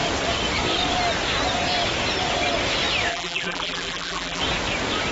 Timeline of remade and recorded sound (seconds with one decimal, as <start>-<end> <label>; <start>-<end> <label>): 0.0-3.1 recorded; 3.1-4.4 remade; 4.4-5.1 recorded